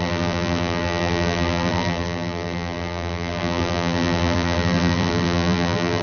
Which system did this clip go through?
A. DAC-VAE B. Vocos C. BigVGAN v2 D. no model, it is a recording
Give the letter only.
C